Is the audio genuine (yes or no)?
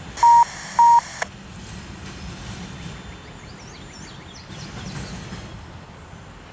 yes